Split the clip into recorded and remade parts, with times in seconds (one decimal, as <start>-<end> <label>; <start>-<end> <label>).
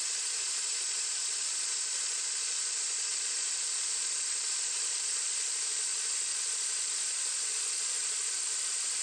0.0-9.0 recorded